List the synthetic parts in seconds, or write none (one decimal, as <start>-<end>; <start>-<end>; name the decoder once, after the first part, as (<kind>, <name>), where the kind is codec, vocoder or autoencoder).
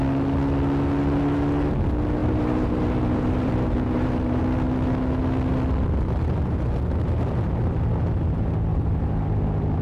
2.2-4.4 (vocoder, BigVGAN v2); 8.7-9.4